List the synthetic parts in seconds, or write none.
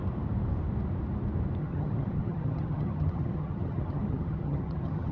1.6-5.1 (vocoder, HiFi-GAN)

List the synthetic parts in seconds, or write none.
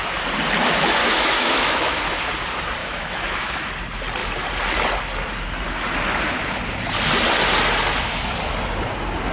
1.0-2.0 (autoencoder, DAC-VAE); 2.8-3.7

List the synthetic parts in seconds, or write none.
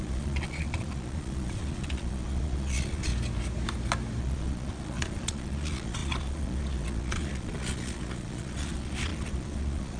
0.0-3.1 (vocoder, Vocos); 4.2-10.0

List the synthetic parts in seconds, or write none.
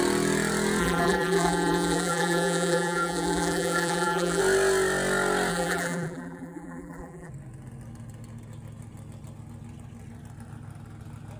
0.8-4.4 (vocoder, BigVGAN v2); 5.5-7.3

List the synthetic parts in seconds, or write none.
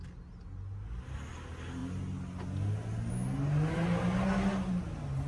none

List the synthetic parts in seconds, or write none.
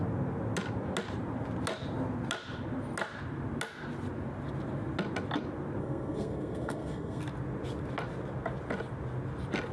5.8-7.2 (codec, SNAC)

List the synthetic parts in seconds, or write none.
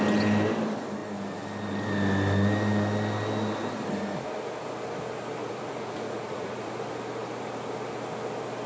5.4-6.7 (vocoder, Vocos)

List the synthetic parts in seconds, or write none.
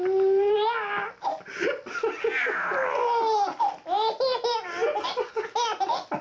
none